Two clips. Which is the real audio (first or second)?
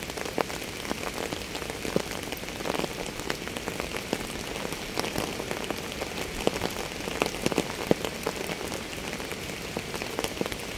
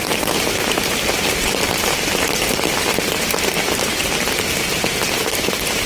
first